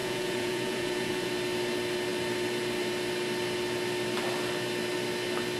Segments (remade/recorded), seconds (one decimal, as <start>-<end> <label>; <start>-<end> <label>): 0.0-1.3 remade; 1.3-5.6 recorded